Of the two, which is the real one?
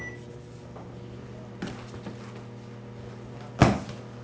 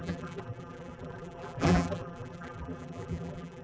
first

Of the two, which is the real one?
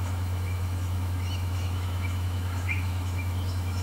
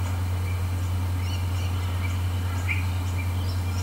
second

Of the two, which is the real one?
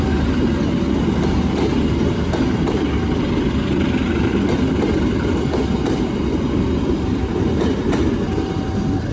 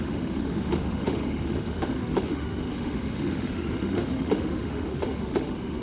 first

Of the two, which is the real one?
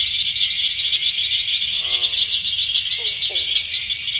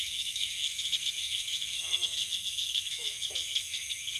first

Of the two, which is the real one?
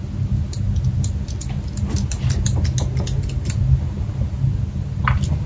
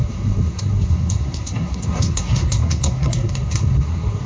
first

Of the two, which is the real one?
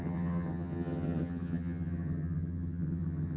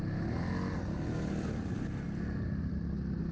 second